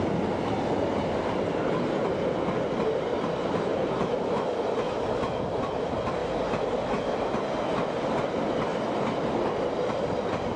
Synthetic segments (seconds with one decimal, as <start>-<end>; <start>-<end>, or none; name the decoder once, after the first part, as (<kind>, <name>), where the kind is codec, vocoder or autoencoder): 3.7-4.4 (vocoder, BigVGAN v2); 6.2-7.0